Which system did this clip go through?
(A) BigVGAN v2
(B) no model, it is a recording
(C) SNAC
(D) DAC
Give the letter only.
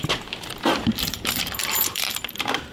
A